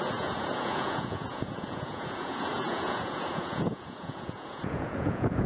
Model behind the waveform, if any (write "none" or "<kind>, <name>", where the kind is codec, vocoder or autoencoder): vocoder, Vocos